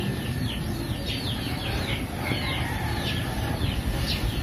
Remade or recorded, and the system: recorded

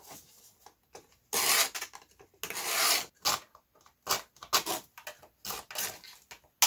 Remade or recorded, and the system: recorded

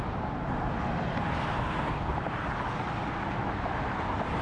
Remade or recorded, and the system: recorded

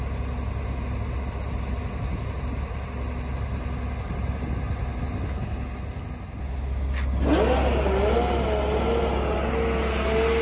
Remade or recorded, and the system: recorded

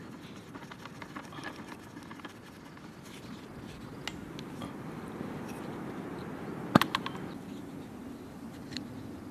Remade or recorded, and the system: recorded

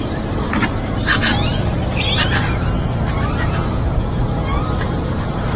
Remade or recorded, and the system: remade, vocoder, BigVGAN v2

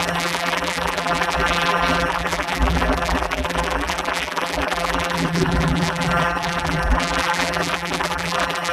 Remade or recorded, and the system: remade, vocoder, BigVGAN v2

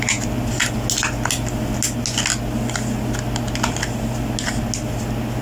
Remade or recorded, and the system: recorded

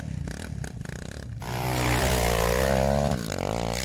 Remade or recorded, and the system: remade, vocoder, BigVGAN v2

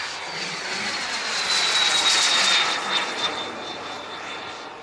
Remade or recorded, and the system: recorded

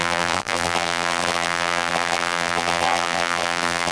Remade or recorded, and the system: remade, vocoder, BigVGAN v2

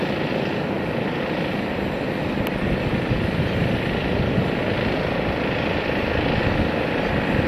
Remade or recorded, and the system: remade, vocoder, BigVGAN v2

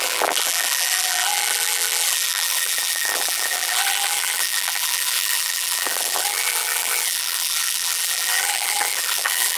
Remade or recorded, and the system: remade, vocoder, BigVGAN v2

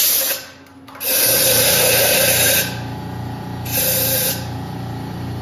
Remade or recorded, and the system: recorded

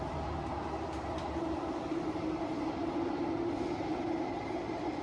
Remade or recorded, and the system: remade, vocoder, BigVGAN v2